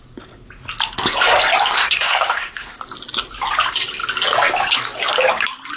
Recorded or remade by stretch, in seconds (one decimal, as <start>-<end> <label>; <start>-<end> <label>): 0.0-1.8 recorded; 1.8-2.7 remade; 2.7-5.8 recorded